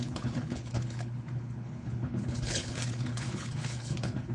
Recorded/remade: remade